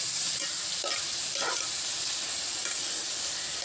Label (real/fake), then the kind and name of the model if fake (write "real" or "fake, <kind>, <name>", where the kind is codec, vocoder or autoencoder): real